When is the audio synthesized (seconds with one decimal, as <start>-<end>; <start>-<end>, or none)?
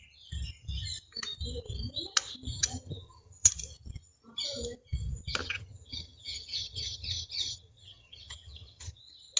2.5-3.5; 5.4-9.0